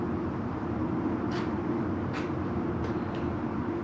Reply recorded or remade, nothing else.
recorded